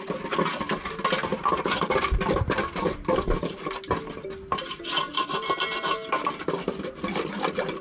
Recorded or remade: recorded